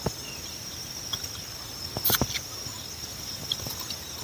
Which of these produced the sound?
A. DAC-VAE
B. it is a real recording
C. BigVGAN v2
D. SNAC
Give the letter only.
B